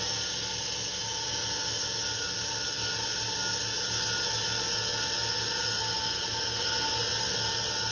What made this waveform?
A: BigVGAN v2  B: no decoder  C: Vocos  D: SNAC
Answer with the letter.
B